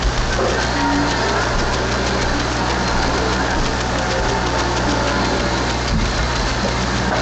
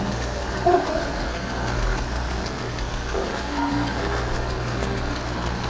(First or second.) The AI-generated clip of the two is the second